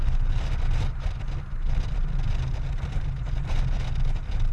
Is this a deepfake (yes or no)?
no